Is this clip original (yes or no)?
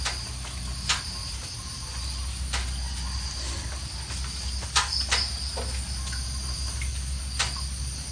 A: yes